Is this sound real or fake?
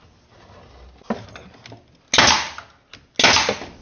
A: real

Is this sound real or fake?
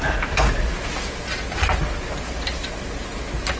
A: real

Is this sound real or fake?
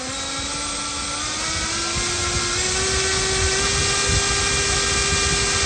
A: real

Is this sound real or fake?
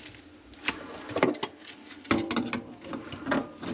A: real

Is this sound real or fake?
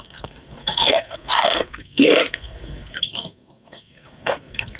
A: fake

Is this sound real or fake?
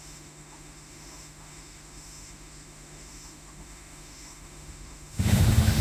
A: fake